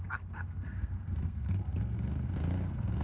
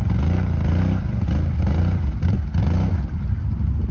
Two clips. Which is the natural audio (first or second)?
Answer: second